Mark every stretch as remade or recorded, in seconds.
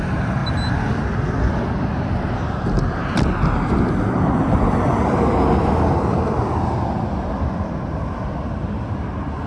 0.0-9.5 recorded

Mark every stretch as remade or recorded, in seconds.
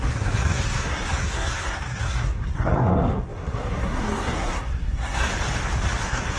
0.0-5.3 remade; 5.3-6.0 recorded; 6.0-6.4 remade